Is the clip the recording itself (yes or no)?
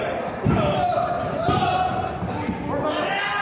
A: yes